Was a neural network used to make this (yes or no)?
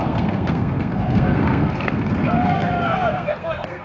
yes